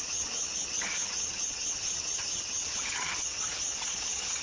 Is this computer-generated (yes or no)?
yes